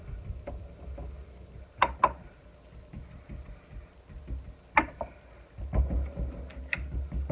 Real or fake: real